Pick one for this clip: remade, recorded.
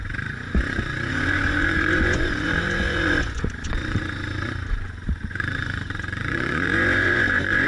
remade